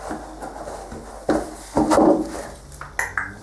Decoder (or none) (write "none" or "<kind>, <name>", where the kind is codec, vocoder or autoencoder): none